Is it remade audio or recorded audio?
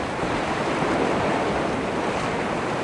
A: recorded